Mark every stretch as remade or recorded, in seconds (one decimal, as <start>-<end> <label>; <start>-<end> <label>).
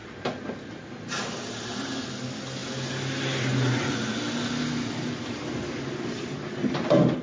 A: 0.0-7.2 recorded